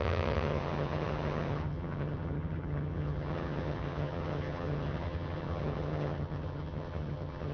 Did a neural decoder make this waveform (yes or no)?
yes